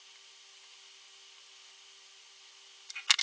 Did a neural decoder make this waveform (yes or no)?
no